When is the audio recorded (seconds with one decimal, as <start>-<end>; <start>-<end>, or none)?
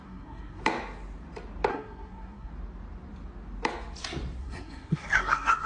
0.6-1.7; 2.5-4.4